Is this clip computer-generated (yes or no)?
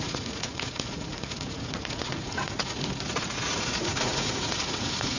yes